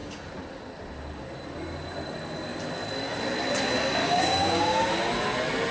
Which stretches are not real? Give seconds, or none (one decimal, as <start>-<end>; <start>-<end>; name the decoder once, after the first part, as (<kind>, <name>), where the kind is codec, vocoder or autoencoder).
4.0-4.9 (codec, DAC)